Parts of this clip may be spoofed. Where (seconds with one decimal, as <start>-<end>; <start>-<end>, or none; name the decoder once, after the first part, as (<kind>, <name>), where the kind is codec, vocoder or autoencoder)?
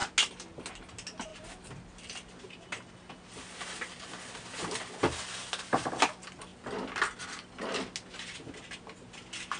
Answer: none